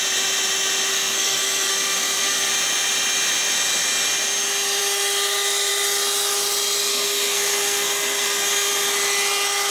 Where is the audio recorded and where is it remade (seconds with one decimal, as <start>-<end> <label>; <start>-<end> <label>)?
0.0-0.9 recorded; 0.9-2.5 remade; 2.5-6.9 recorded; 6.9-8.7 remade; 8.7-9.7 recorded